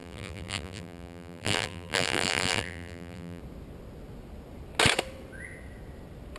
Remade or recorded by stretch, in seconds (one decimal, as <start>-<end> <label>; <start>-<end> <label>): 0.0-3.4 remade; 3.4-6.4 recorded